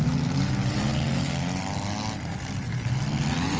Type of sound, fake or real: real